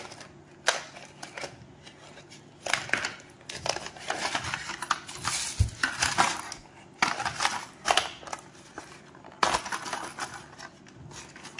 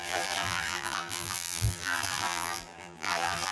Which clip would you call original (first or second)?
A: first